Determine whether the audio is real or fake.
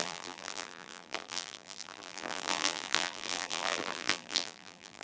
fake